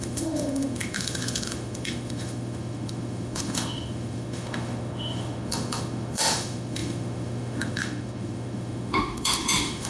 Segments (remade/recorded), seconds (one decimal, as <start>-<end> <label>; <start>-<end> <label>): 0.0-9.9 remade